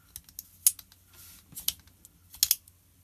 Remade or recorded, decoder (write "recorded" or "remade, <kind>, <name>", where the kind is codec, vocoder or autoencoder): recorded